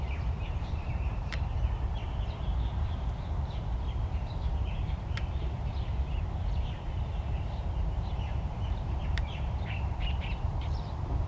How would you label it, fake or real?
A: fake